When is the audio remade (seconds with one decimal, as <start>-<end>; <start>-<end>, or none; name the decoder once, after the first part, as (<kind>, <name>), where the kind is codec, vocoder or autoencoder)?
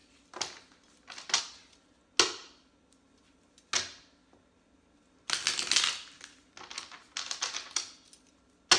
none